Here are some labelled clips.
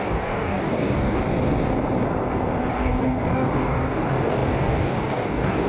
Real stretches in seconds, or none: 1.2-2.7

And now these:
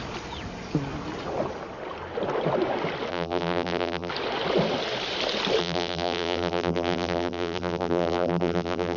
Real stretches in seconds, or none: 0.0-3.1; 4.1-5.6

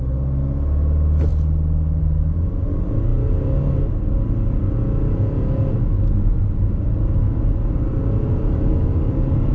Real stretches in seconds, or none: 0.0-9.5

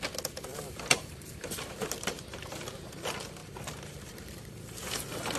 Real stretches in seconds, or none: 0.0-0.5; 2.9-3.4; 4.6-5.4

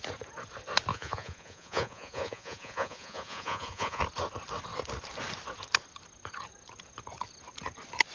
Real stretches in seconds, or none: 0.0-0.9; 4.0-8.1

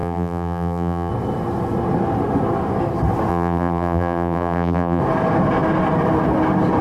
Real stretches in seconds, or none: 1.1-3.3; 5.0-6.8

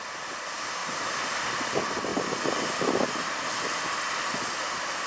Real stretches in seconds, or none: 0.0-0.8; 1.3-5.1

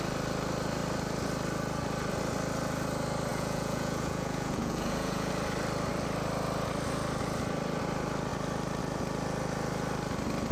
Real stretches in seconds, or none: 0.0-3.3; 5.3-10.5